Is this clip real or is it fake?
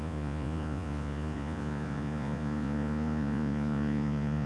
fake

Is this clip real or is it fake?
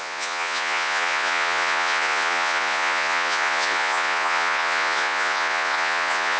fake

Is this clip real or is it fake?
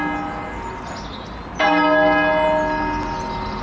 real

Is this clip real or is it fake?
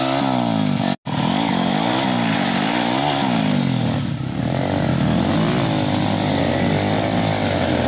real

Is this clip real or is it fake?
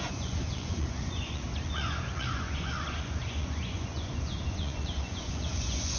fake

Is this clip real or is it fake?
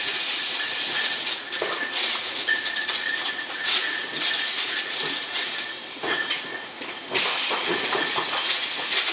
fake